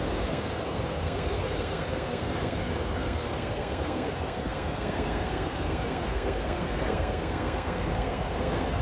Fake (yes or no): yes